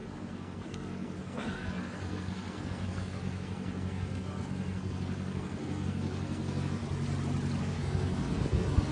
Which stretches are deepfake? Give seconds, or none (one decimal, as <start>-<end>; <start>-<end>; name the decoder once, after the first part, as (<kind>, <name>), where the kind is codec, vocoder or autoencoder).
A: 0.0-6.8 (codec, SNAC); 7.6-8.9